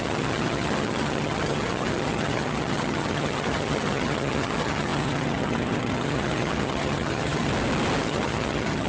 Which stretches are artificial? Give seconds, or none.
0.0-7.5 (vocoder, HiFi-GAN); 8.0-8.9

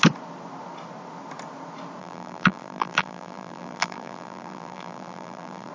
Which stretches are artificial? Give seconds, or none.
2.0-5.7 (vocoder, BigVGAN v2)

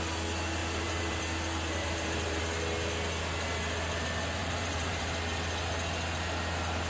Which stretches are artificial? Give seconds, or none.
0.6-1.2 (vocoder, BigVGAN v2); 1.8-2.4; 4.4-5.0

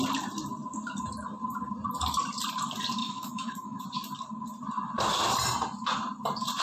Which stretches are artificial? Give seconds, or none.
3.0-3.8 (autoencoder, DAC-VAE)